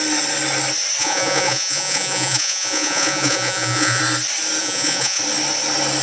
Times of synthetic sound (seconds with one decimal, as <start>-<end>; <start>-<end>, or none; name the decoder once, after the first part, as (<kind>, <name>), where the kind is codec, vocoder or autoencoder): 1.0-4.0 (vocoder, Vocos); 4.6-5.2